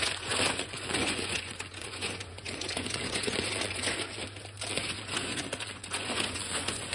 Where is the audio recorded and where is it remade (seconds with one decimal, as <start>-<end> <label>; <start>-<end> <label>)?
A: 0.0-4.2 remade; 4.2-4.7 recorded; 4.7-6.9 remade